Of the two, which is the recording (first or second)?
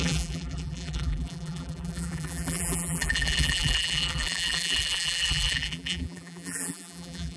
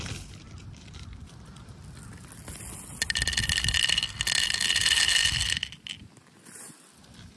second